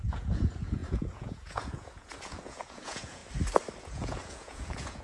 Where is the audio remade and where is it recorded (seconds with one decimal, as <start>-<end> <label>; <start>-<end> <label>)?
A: 0.0-3.2 remade; 3.2-3.8 recorded; 3.8-5.0 remade